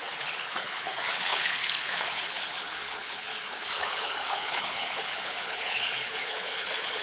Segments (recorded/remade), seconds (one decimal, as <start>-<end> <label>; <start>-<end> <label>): 0.0-7.0 remade